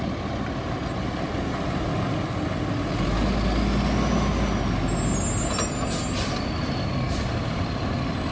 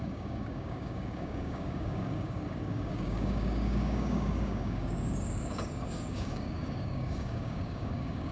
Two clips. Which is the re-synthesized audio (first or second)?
second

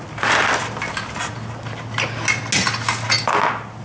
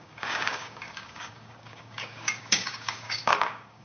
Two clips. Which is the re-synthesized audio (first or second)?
second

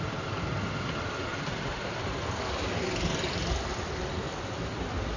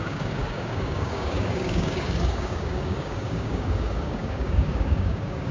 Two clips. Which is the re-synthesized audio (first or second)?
second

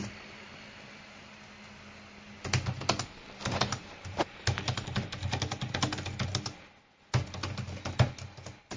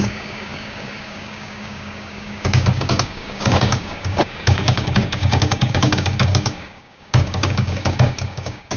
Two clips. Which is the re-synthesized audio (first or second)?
second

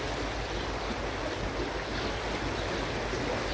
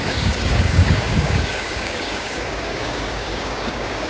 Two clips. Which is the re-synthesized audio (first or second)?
second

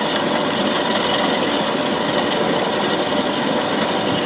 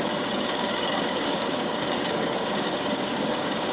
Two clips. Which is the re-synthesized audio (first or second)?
second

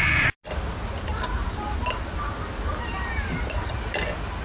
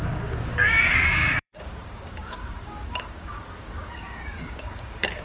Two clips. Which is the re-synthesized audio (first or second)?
second